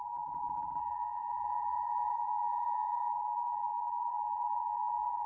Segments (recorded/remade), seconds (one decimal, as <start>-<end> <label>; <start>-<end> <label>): 0.0-5.3 remade